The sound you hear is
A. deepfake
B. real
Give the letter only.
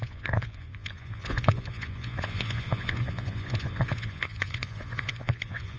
A